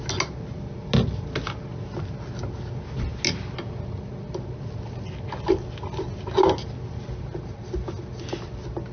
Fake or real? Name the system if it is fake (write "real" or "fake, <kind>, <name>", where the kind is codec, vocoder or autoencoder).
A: real